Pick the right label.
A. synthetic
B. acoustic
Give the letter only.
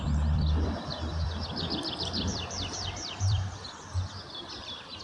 A